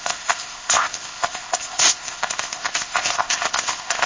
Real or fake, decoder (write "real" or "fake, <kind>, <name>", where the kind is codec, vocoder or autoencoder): fake, codec, ZipCodec